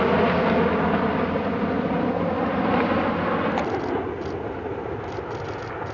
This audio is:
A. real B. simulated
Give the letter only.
A